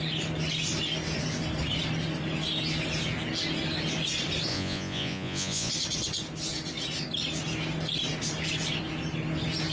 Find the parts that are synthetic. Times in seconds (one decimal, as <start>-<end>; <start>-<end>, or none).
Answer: 4.5-5.7